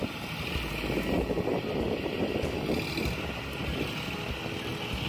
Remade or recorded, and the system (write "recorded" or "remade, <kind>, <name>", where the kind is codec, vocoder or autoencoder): recorded